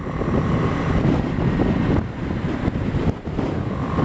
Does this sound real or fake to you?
real